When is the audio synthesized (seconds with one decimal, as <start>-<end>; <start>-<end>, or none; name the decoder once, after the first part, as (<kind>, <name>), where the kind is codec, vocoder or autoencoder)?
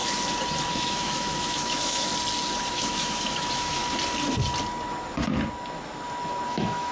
0.7-2.1 (autoencoder, DAC-VAE); 2.7-3.8; 6.5-6.9